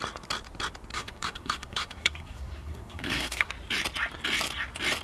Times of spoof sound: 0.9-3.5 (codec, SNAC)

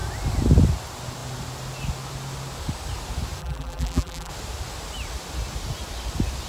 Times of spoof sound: 3.4-4.3 (vocoder, BigVGAN v2)

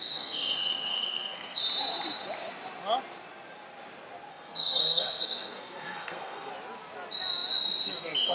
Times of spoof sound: 0.0-1.6 (codec, SNAC); 4.3-6.5

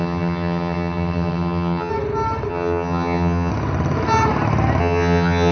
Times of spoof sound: 0.0-1.9 (vocoder, HiFi-GAN); 2.5-3.5; 4.8-5.5

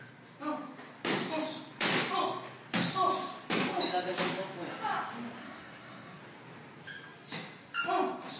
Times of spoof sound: 5.4-6.2 (codec, SNAC)

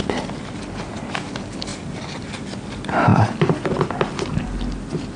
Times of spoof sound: 3.1-5.2 (vocoder, BigVGAN v2)